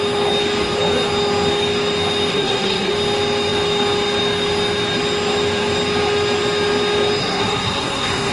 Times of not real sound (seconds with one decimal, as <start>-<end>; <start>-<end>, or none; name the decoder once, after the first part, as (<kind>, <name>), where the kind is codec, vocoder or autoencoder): 2.3-2.9 (codec, SNAC); 7.2-8.3